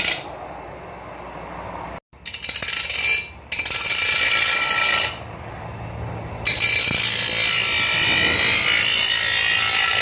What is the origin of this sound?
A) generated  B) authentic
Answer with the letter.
B